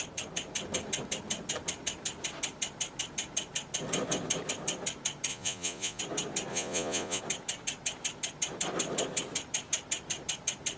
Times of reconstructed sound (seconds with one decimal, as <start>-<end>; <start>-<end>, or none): 5.3-6.0; 6.5-7.2